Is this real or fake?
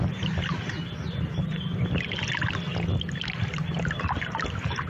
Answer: real